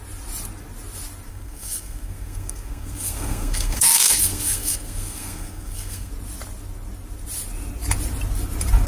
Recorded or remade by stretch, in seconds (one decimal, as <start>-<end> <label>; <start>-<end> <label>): 0.0-1.3 recorded; 1.3-6.1 remade; 6.1-8.9 recorded